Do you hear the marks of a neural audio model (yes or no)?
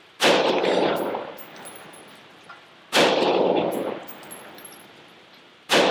no